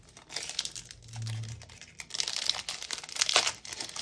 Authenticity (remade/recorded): recorded